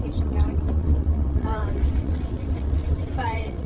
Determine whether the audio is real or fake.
fake